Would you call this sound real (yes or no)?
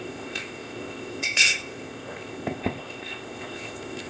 no